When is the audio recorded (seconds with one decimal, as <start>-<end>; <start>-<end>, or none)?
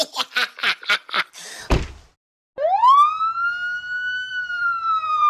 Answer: 0.6-1.2; 2.1-4.3